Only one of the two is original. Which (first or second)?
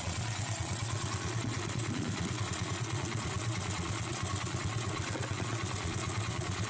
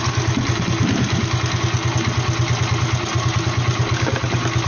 second